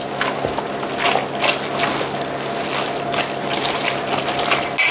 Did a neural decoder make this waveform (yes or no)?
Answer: no